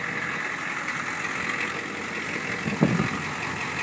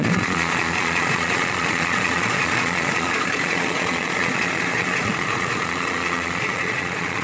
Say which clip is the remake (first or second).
second